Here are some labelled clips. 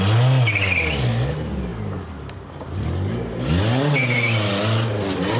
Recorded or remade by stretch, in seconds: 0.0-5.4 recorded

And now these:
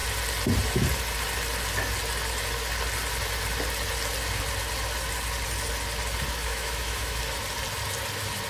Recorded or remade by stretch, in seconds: 0.0-6.4 recorded; 6.4-7.2 remade; 7.2-8.5 recorded

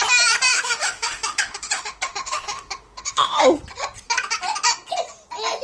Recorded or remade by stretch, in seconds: 0.0-0.5 recorded; 0.5-3.4 remade; 3.4-5.6 recorded

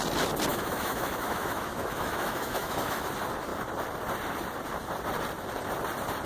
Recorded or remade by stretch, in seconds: 0.0-0.5 recorded; 0.5-3.1 remade; 3.1-6.3 recorded

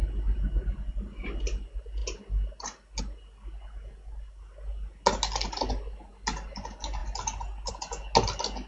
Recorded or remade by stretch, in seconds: 0.0-8.7 recorded

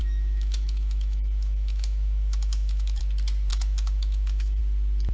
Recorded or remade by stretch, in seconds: 0.0-3.0 remade; 3.0-3.5 recorded; 3.5-4.6 remade; 4.6-5.1 recorded

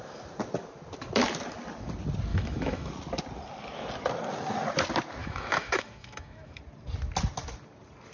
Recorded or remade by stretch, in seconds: 0.0-2.3 recorded; 2.3-2.9 remade; 2.9-5.2 recorded; 5.2-6.6 remade; 6.6-8.1 recorded